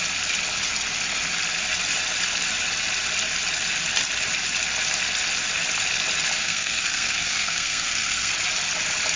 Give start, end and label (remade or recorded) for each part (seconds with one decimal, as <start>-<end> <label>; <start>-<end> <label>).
0.0-6.4 recorded; 6.4-8.3 remade; 8.3-9.2 recorded